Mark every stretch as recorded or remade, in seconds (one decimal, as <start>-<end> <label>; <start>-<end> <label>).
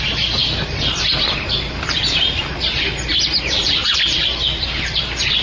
0.0-0.4 recorded; 0.4-2.0 remade; 2.0-3.1 recorded; 3.1-5.0 remade; 5.0-5.4 recorded